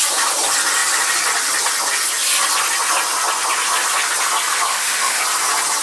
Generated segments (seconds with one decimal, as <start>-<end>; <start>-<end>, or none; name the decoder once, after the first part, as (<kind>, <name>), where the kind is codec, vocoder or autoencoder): 4.7-5.2 (autoencoder, DAC-VAE)